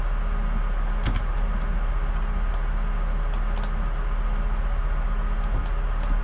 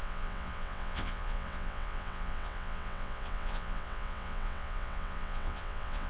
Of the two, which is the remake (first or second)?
second